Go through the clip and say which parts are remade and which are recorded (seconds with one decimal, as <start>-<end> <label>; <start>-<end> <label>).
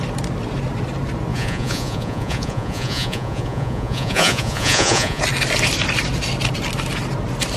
0.0-1.3 recorded; 1.3-5.2 remade; 5.2-7.6 recorded